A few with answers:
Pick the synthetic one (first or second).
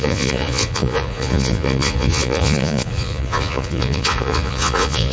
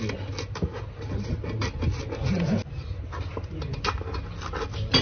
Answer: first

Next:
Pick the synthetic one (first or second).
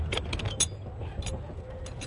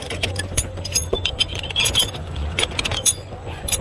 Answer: second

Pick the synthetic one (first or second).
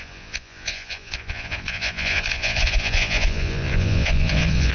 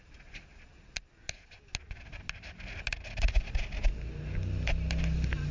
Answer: first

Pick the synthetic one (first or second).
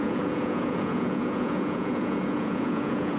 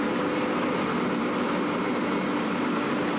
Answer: first